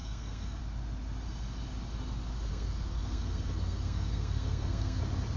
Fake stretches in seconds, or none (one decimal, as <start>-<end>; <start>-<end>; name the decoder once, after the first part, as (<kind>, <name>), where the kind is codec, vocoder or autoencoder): 0.0-0.6 (codec, SNAC); 2.5-5.0